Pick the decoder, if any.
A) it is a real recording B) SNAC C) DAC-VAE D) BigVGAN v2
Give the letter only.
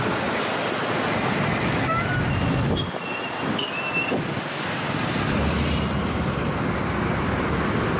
A